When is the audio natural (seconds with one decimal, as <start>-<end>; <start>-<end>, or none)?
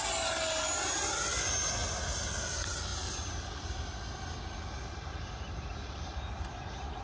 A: 0.0-7.0